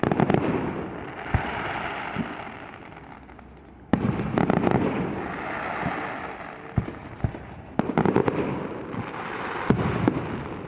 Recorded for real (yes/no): yes